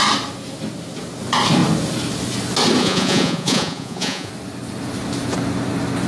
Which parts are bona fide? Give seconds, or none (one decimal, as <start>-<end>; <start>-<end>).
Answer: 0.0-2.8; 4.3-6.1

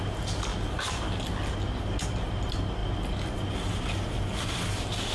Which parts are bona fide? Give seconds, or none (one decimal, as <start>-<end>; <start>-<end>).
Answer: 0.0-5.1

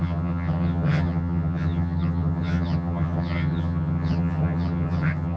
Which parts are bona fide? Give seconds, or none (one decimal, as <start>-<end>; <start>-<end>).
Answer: none

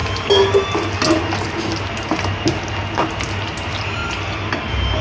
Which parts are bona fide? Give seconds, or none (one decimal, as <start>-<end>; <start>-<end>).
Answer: 0.0-5.0

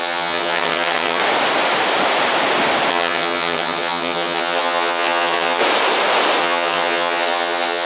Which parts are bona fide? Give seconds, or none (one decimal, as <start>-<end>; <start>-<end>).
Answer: 1.2-2.9; 5.6-6.4

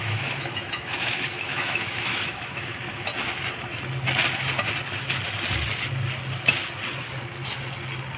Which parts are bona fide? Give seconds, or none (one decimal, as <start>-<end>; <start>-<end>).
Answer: 3.1-8.2

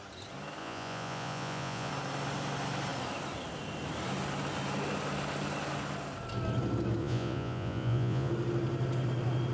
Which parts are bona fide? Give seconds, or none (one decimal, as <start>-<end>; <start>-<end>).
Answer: 0.0-0.6; 1.9-7.0; 8.3-9.5

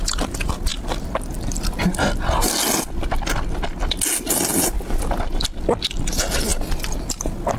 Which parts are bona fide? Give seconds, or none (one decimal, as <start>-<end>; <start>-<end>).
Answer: 0.0-4.5; 5.9-7.6